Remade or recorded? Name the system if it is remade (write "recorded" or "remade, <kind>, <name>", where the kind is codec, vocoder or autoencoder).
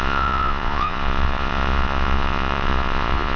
remade, vocoder, Vocos